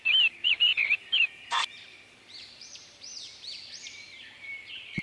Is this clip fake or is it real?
fake